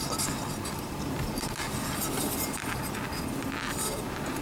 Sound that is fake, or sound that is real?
real